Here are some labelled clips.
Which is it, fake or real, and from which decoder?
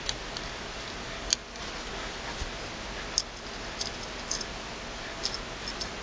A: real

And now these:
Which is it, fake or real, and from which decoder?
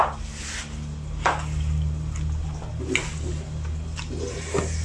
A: real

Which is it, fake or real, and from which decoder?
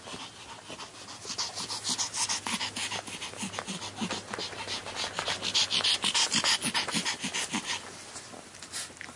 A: real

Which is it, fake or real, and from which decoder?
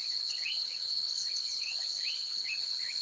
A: fake, codec, HILCodec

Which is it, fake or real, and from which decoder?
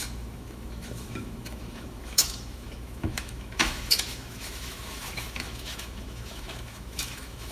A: fake, autoencoder, DAC-VAE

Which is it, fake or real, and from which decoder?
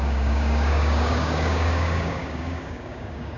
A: fake, codec, DAC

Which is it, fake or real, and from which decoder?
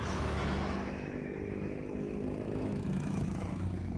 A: fake, autoencoder, DAC-VAE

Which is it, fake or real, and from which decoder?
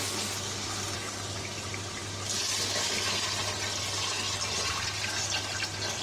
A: real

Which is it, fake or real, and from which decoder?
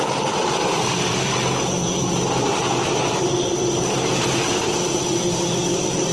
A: fake, vocoder, BigVGAN v2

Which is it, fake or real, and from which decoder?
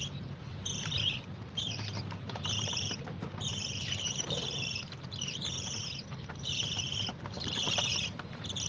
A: fake, vocoder, BigVGAN v2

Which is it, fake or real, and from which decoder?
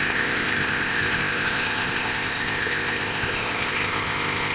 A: fake, codec, ZipCodec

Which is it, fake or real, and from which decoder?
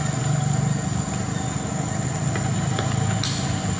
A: real